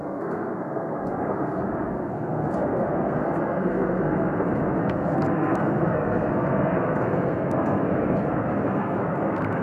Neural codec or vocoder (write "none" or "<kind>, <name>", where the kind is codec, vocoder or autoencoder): codec, SNAC